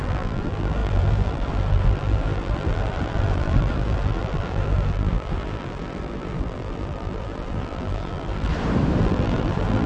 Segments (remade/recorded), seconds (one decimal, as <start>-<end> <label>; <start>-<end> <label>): 0.0-8.5 remade; 8.5-9.0 recorded; 9.0-9.9 remade